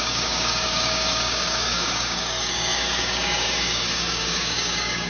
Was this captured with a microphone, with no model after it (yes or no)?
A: no